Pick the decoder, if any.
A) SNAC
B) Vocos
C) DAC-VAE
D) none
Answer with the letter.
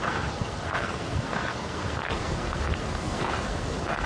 A